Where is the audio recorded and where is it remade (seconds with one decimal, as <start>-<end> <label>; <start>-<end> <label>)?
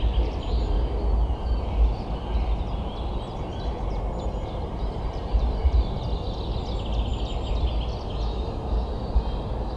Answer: 0.0-3.5 recorded; 3.5-6.0 remade; 6.0-9.8 recorded